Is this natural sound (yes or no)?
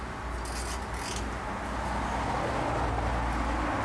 yes